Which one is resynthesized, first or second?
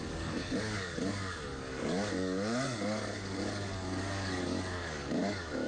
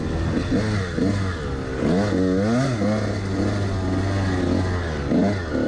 first